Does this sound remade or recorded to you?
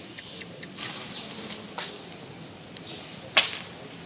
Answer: recorded